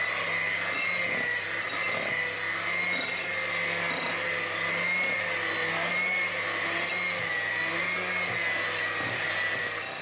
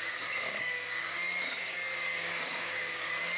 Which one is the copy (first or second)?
second